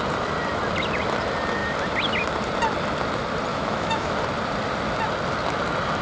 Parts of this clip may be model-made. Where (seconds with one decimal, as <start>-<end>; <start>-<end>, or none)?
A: 3.5-4.2